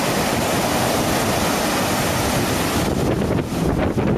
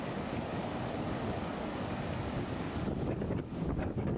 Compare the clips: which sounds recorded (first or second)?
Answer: first